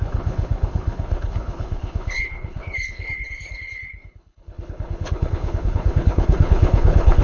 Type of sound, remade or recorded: remade